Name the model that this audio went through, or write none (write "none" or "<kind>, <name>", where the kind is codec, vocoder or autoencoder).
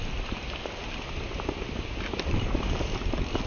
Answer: none